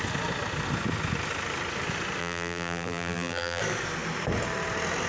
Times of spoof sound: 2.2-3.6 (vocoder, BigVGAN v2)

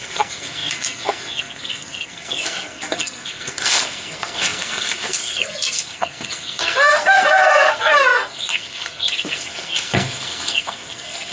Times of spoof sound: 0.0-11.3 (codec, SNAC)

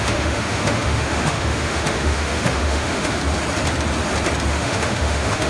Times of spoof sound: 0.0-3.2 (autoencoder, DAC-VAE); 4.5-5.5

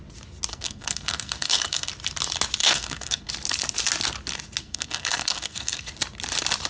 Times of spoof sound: 0.5-1.9 (codec, SNAC); 2.6-3.3; 4.6-5.9